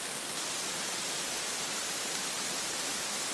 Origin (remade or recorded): recorded